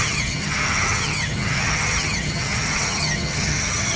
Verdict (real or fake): fake